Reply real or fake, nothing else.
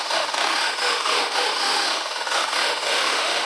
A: fake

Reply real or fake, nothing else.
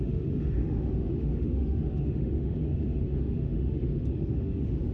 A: fake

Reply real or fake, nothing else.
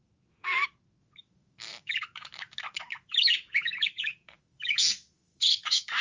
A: fake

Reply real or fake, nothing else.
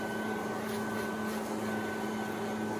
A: real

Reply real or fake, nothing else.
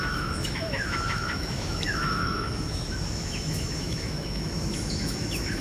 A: fake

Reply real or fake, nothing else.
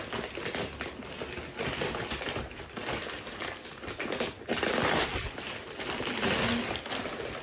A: real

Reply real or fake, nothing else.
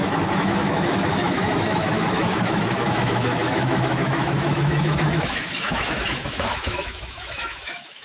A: fake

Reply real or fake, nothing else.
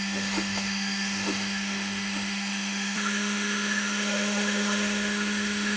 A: fake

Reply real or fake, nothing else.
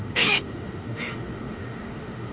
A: fake